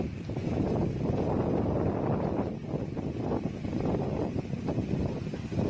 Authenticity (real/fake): real